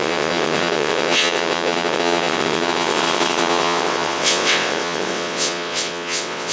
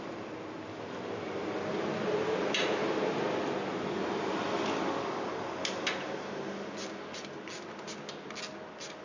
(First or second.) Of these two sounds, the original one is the second